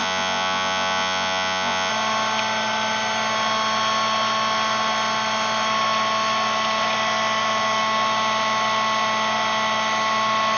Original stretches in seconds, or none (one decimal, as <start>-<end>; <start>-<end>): 1.9-10.6